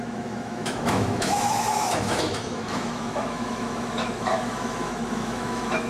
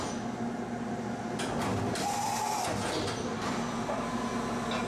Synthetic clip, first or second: first